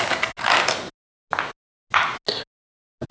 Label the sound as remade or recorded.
recorded